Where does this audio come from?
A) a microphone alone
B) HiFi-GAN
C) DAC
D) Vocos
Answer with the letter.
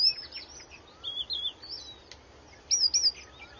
A